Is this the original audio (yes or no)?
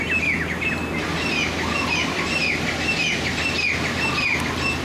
yes